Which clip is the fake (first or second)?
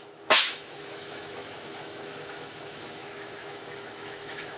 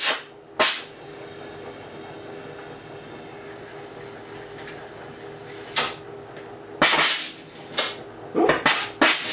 first